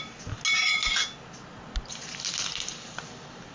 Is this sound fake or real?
real